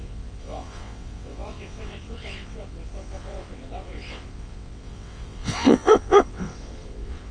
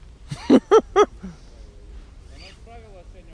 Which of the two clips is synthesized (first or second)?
first